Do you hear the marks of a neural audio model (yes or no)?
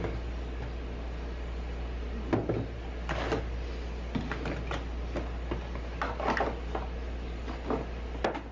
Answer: no